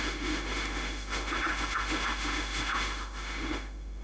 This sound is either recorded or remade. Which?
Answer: remade